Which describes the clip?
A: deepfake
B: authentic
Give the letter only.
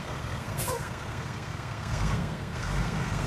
A